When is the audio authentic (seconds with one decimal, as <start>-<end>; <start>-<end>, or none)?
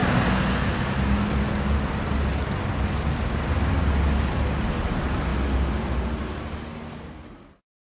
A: 0.0-4.7; 5.3-7.0